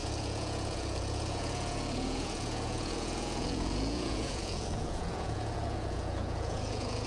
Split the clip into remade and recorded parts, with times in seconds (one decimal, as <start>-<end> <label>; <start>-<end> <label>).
0.0-7.1 remade